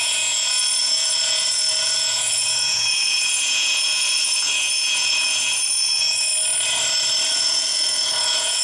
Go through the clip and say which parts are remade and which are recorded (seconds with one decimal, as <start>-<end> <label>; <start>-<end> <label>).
0.0-6.3 remade; 6.3-7.3 recorded; 7.3-8.6 remade